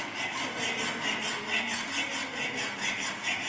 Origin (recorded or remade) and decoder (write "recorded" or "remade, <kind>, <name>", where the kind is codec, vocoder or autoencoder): recorded